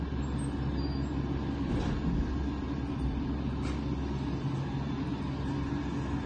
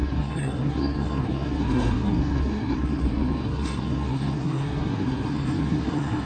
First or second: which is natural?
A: first